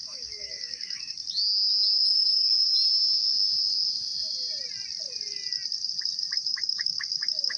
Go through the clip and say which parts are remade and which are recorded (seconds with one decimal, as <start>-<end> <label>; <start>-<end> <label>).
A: 0.0-1.1 remade; 1.1-6.5 recorded; 6.5-7.6 remade